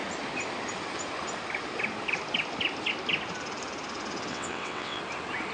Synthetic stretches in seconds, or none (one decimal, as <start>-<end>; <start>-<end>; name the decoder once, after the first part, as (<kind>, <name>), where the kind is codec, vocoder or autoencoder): 4.3-5.0 (vocoder, WaveNeXt)